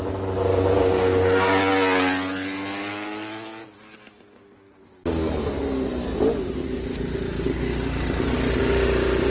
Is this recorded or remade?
recorded